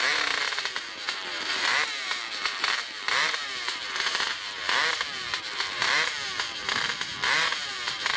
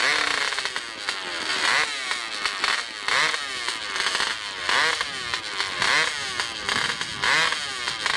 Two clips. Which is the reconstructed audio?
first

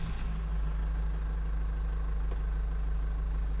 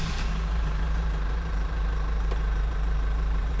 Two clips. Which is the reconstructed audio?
second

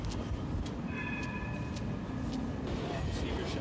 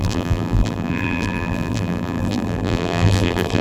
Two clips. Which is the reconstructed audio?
second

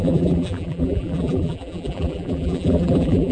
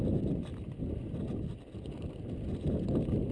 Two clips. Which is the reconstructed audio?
first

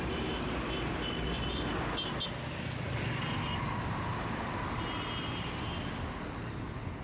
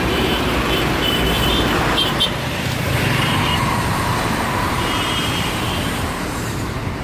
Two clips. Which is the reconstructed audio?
second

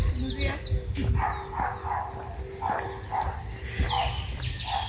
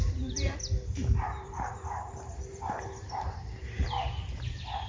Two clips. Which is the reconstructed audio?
second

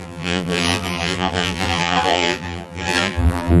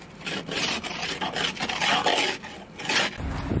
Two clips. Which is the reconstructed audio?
first